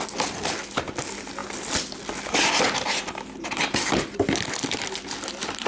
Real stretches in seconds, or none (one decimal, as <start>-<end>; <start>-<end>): 0.0-5.7